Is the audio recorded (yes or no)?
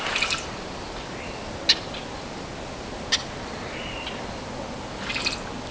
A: yes